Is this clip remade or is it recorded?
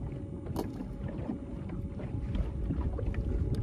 recorded